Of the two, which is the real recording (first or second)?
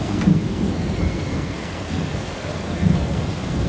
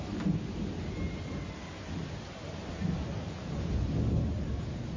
second